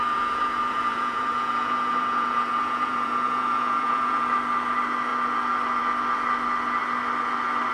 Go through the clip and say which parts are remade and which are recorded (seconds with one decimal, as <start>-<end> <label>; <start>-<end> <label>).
0.0-4.2 remade; 4.2-7.7 recorded